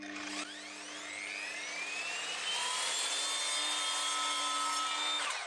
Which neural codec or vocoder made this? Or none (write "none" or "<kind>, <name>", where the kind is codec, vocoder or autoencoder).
none